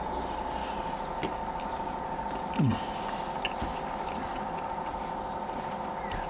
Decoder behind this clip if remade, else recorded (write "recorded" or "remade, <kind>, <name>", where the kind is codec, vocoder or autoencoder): recorded